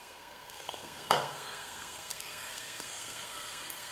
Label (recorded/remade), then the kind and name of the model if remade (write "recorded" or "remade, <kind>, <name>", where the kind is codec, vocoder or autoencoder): remade, codec, SNAC